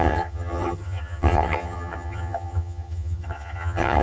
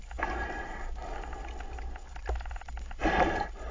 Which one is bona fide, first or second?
second